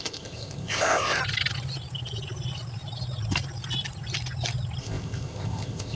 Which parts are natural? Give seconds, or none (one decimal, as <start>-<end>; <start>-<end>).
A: 1.2-4.8